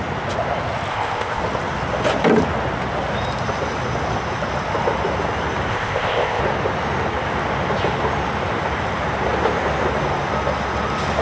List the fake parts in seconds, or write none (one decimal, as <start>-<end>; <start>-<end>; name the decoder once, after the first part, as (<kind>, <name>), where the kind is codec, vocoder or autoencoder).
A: 0.9-1.4 (codec, ZipCodec); 5.7-6.4